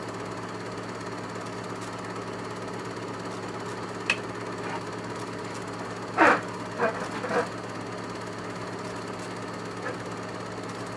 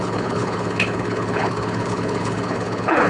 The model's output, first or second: second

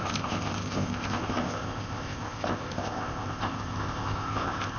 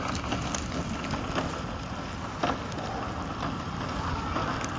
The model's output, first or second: first